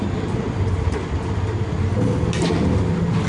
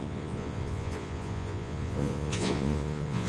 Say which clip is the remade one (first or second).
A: second